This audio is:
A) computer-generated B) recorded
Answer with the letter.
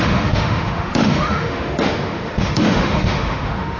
A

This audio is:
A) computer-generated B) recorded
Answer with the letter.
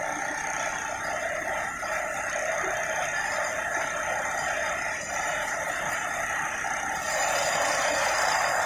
B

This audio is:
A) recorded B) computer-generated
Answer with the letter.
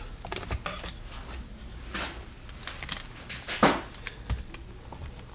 A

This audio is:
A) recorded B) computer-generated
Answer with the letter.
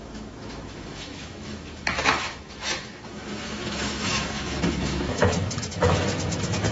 B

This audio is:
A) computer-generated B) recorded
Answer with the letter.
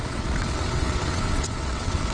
A